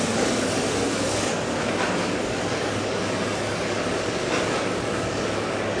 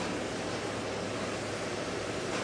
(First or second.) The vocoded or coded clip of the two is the first